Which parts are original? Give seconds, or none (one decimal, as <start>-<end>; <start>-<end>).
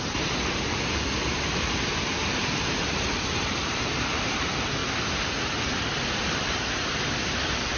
4.8-6.2